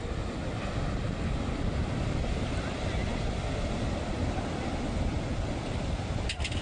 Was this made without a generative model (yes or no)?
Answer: yes